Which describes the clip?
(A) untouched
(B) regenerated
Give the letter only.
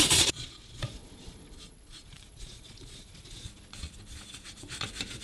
B